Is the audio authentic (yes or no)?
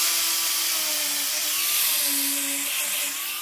yes